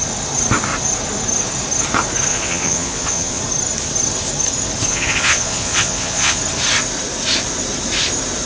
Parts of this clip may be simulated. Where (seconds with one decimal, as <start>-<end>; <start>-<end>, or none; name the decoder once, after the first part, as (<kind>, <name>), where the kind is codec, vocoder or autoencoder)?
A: 2.3-3.4 (vocoder, Vocos); 4.9-6.4